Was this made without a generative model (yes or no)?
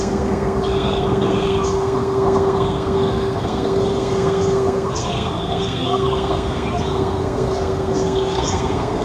no